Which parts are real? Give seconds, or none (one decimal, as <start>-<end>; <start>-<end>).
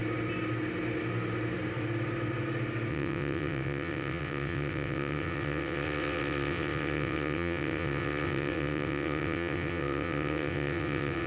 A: 0.0-2.9